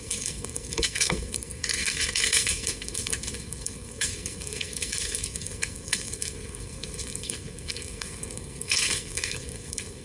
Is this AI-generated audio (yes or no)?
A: yes